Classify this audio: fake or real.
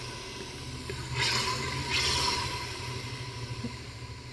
real